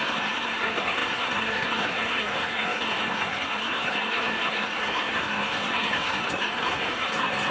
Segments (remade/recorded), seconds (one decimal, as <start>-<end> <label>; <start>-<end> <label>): 0.0-7.5 remade